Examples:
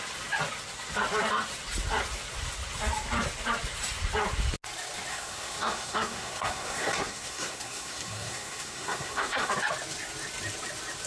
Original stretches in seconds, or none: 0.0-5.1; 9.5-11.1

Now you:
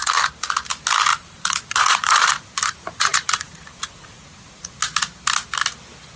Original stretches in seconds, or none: 0.0-1.1; 4.8-6.2